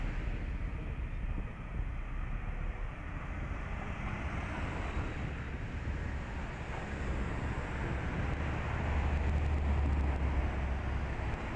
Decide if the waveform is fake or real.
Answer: real